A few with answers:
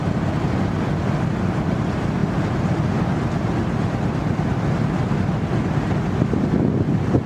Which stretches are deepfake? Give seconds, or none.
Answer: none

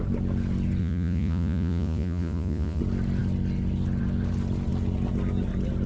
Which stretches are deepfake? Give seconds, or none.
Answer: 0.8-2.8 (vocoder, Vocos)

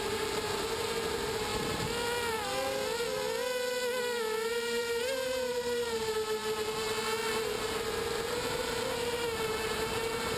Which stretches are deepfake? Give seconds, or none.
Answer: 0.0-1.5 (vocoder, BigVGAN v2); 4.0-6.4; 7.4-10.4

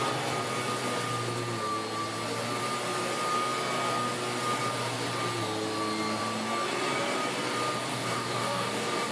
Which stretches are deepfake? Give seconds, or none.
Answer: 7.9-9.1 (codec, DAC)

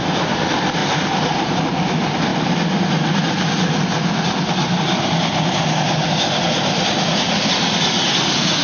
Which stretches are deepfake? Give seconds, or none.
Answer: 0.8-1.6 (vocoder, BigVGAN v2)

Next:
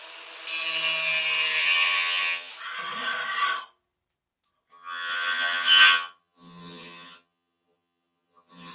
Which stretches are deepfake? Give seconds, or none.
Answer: 1.6-2.5 (vocoder, HiFi-GAN); 4.7-8.7

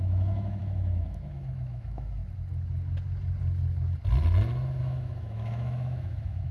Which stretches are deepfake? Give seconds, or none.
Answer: 0.0-2.2 (autoencoder, DAC-VAE); 4.8-6.5